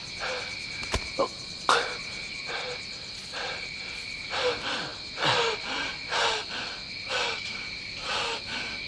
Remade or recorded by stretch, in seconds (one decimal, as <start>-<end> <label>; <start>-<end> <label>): 0.0-8.9 recorded

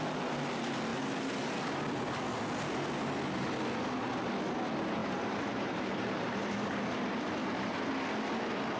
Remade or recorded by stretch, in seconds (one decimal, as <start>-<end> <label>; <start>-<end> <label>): 0.0-5.0 recorded; 5.0-6.8 remade; 6.8-7.4 recorded; 7.4-7.9 remade; 7.9-8.8 recorded

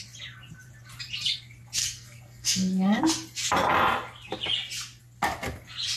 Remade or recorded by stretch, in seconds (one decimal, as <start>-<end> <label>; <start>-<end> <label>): 0.0-1.8 recorded; 1.8-3.0 remade; 3.0-6.0 recorded

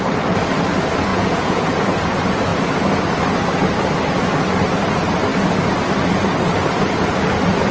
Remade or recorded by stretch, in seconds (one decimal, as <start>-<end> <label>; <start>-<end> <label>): 0.0-1.1 recorded; 1.1-1.6 remade; 1.6-7.7 recorded

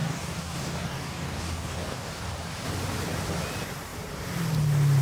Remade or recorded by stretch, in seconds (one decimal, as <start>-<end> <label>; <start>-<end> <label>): 0.0-2.2 remade; 2.2-5.0 recorded

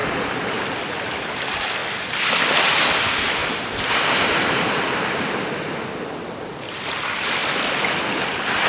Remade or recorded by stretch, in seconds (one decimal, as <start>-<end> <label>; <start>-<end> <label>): 0.0-3.4 recorded; 3.4-5.4 remade; 5.4-8.7 recorded

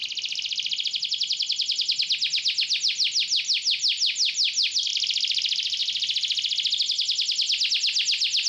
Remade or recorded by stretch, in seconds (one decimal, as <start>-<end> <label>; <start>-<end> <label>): 0.0-8.5 recorded